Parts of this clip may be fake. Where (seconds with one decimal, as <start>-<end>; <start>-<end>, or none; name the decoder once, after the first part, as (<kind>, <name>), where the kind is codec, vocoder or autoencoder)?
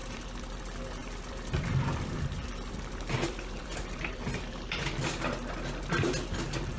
0.0-0.6 (vocoder, BigVGAN v2); 1.0-5.1